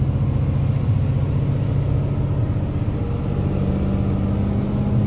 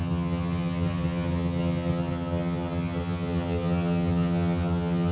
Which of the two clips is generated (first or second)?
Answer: second